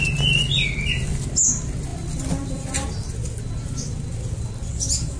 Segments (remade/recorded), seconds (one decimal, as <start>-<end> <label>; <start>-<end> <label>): 0.0-5.2 recorded